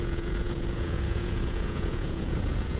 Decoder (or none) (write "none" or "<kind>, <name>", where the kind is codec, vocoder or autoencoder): vocoder, Vocos